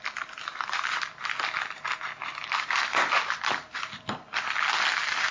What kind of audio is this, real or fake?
real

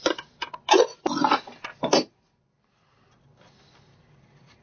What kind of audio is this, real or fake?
real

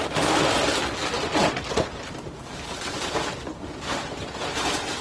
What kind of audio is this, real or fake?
real